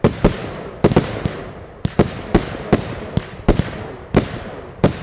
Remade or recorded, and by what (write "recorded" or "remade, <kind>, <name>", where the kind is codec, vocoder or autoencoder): recorded